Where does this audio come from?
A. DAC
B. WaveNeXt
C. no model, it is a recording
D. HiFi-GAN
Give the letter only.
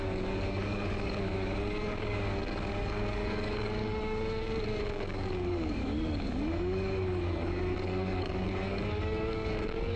A